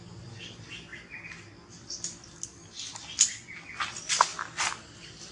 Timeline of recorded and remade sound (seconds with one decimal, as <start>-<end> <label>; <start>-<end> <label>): 0.0-4.3 recorded; 4.3-5.3 remade